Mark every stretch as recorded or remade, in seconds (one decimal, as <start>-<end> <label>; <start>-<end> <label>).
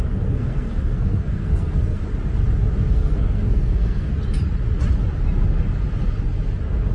0.0-2.0 remade; 2.0-2.9 recorded; 2.9-4.1 remade; 4.1-6.9 recorded